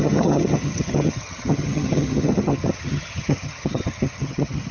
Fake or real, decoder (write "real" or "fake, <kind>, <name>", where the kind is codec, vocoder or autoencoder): fake, vocoder, HiFi-GAN